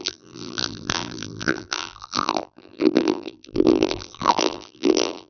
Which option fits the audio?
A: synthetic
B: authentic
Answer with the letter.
A